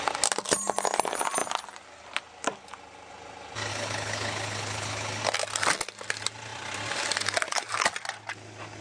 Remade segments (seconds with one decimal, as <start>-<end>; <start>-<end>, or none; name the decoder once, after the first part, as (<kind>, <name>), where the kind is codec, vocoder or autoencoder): 3.7-5.2 (codec, HILCodec)